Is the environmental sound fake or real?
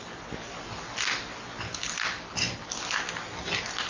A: real